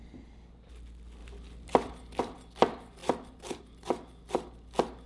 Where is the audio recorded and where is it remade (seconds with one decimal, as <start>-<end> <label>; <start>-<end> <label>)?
0.0-5.1 recorded